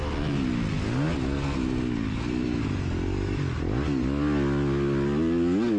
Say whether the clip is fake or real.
real